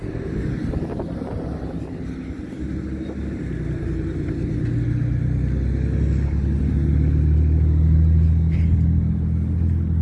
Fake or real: real